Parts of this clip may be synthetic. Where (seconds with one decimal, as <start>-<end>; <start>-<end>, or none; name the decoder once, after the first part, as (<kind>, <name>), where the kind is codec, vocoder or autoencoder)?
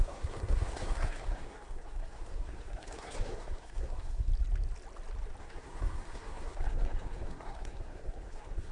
0.0-4.3 (codec, SNAC); 5.4-8.7